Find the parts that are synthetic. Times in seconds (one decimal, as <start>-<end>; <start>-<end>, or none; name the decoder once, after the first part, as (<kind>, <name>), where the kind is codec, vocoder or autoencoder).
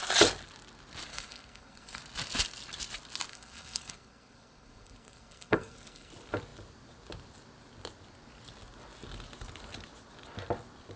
1.1-2.0 (codec, SNAC); 3.3-6.1